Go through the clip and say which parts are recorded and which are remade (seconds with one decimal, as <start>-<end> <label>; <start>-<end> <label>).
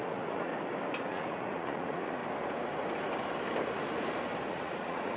0.0-0.5 remade; 0.5-1.1 recorded; 1.1-2.2 remade; 2.2-4.5 recorded; 4.5-5.2 remade